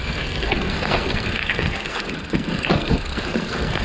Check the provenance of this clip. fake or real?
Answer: fake